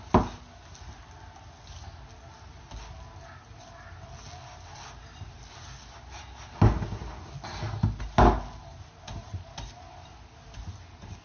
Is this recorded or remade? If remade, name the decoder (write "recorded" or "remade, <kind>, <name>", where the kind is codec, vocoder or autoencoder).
recorded